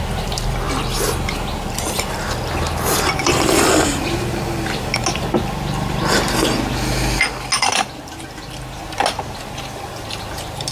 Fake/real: real